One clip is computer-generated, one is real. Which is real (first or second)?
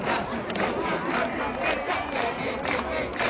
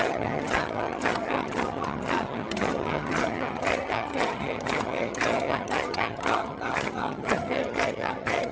first